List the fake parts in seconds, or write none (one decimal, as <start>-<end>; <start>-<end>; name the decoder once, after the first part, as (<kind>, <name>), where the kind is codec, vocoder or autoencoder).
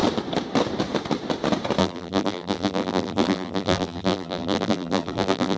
1.8-5.6 (vocoder, BigVGAN v2)